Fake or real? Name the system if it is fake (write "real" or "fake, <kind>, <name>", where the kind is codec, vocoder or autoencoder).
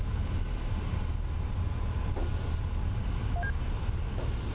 real